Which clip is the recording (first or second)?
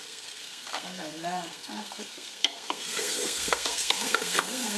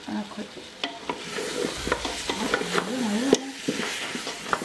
second